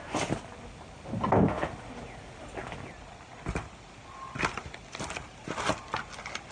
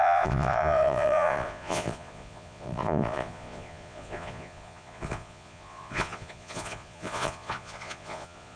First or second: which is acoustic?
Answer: first